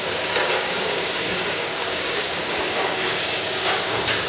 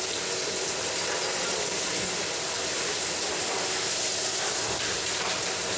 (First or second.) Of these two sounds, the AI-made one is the first